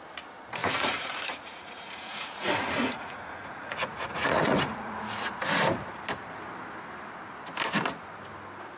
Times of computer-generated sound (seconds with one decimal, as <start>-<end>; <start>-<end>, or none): 0.6-5.2